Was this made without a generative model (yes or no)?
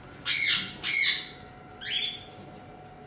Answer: yes